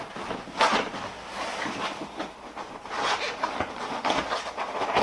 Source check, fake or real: real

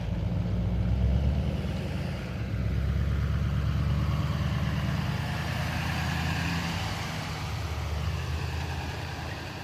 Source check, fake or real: real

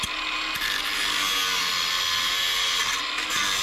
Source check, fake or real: real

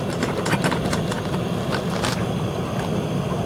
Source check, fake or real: real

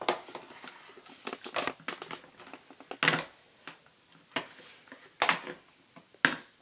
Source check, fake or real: real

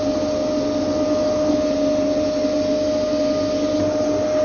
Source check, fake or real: real